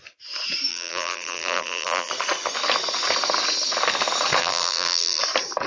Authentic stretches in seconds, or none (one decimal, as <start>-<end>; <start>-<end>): 0.0-0.7; 2.1-4.4; 5.2-5.7